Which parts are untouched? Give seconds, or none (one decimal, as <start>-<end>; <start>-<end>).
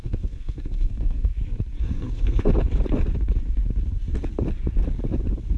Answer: 1.3-1.8; 2.5-5.6